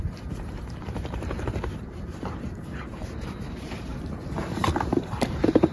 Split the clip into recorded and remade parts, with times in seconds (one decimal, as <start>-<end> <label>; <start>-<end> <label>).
0.0-3.9 remade; 3.9-4.8 recorded; 4.8-5.7 remade